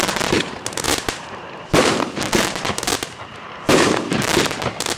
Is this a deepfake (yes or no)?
yes